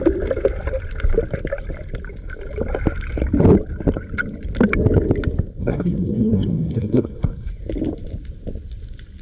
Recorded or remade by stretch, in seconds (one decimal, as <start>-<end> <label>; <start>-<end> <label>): 0.0-5.6 recorded; 5.6-7.5 remade; 7.5-9.2 recorded